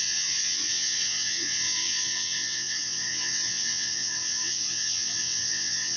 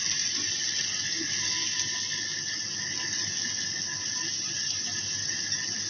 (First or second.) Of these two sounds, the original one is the second